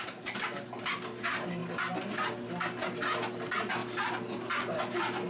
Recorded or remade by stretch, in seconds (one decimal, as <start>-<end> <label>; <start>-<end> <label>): 0.0-5.3 recorded